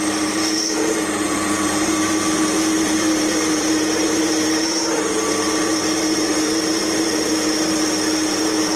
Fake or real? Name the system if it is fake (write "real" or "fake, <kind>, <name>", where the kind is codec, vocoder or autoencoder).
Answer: fake, vocoder, BigVGAN v2